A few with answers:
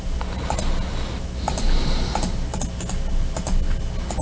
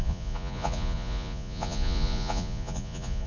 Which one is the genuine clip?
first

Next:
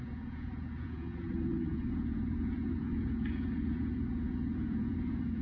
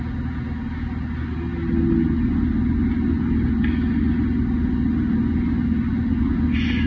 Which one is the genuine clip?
second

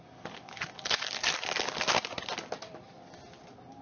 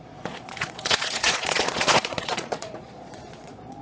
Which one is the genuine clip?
first